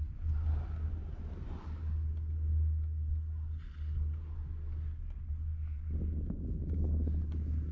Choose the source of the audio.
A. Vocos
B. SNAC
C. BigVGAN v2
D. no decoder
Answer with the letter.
D